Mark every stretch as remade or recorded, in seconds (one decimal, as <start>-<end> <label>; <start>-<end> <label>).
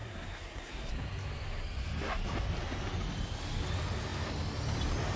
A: 0.0-0.9 remade; 0.9-5.2 recorded